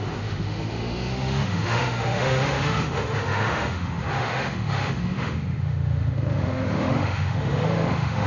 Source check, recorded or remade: remade